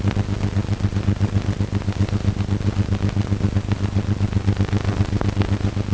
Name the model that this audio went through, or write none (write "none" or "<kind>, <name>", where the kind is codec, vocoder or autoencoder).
vocoder, BigVGAN v2